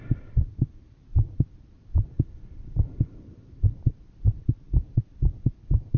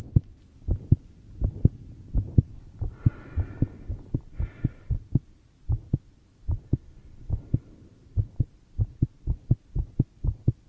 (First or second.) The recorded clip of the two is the second